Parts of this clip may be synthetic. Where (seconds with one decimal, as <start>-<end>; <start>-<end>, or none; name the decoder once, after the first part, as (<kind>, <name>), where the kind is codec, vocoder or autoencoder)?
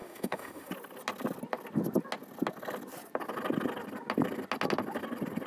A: 0.0-0.7 (autoencoder, DAC-VAE)